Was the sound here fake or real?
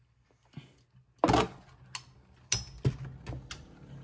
real